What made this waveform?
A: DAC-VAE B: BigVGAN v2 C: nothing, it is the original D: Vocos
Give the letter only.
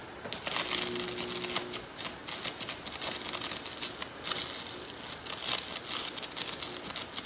C